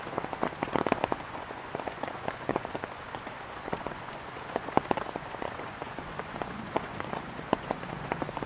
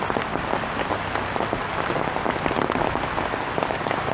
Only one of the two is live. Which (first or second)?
second